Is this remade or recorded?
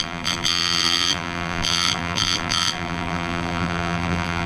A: remade